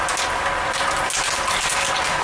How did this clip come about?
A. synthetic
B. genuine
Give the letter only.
B